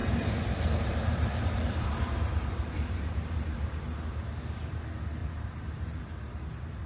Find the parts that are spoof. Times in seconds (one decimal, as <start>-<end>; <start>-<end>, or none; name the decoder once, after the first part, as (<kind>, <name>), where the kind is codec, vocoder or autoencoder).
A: 0.0-4.1 (vocoder, BigVGAN v2); 5.2-6.0

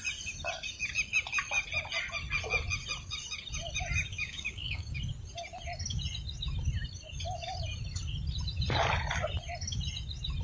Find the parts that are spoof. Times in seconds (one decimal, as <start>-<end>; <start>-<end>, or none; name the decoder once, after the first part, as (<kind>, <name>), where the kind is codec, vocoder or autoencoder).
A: 4.1-5.0 (codec, DAC)

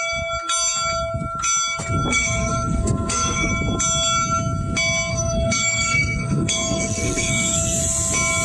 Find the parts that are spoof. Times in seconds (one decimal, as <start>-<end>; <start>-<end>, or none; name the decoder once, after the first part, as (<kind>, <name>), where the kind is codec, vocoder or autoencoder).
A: 2.1-3.5 (codec, SNAC); 5.1-7.8

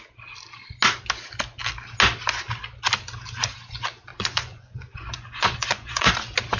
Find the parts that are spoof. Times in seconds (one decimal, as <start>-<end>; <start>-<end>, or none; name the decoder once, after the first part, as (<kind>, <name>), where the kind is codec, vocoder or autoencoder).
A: 4.1-6.1 (vocoder, Vocos)

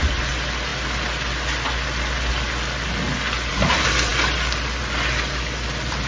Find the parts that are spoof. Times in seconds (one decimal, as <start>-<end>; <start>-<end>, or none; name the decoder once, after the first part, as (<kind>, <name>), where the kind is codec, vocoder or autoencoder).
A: none

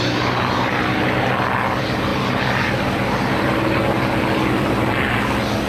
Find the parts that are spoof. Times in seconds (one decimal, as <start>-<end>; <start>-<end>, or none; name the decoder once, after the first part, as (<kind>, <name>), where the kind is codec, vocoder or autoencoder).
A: none